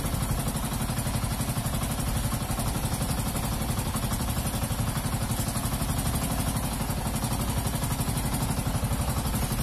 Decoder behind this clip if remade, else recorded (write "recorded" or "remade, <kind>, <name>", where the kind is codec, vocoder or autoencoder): recorded